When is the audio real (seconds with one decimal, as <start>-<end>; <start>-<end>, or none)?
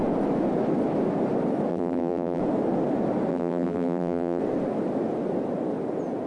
0.0-1.7; 2.4-3.3; 4.4-6.3